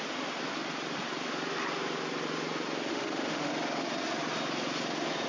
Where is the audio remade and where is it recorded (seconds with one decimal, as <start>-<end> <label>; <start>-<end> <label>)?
0.0-2.9 recorded; 2.9-3.5 remade; 3.5-5.3 recorded